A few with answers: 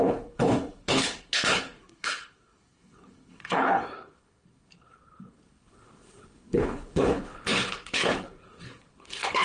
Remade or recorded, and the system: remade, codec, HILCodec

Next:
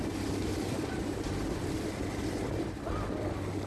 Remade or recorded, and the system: recorded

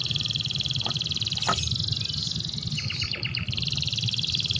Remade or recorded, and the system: recorded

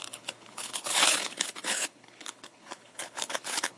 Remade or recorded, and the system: remade, codec, HILCodec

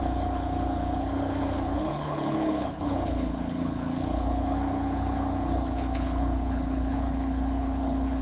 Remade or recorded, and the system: remade, codec, HILCodec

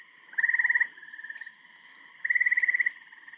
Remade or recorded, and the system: recorded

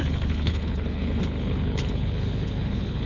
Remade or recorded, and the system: remade, codec, HILCodec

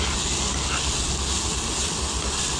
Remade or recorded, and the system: recorded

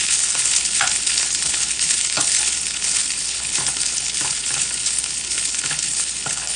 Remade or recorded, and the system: remade, codec, HILCodec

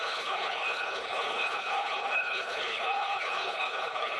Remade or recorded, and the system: remade, codec, HILCodec